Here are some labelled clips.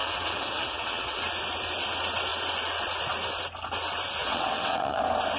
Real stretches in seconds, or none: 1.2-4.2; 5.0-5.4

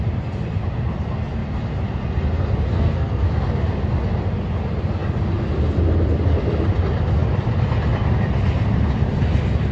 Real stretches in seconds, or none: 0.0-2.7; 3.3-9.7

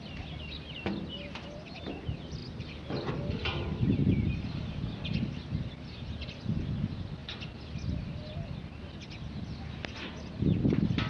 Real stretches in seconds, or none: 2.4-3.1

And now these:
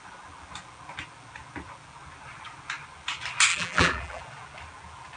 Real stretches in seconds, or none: 0.0-3.5; 4.2-5.2

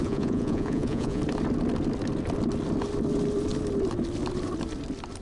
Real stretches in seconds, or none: 1.2-5.2

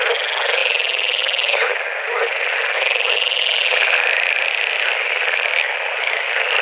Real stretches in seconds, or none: 0.0-6.6